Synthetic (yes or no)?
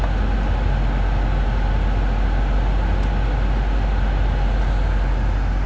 no